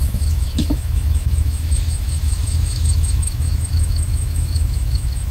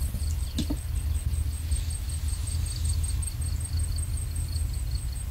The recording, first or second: second